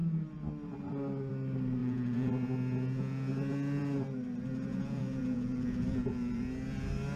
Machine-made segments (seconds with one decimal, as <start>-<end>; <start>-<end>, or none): 1.8-2.3; 4.7-6.4